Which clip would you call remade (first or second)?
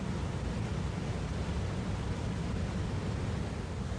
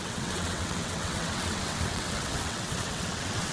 second